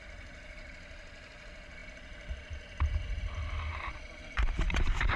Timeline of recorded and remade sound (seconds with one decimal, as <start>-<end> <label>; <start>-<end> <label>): 0.0-5.2 recorded